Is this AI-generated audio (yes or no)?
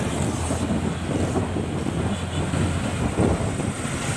no